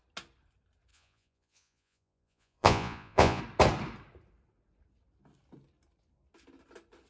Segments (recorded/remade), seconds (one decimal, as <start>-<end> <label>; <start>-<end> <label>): 0.0-0.9 recorded; 0.9-3.4 remade; 3.4-7.1 recorded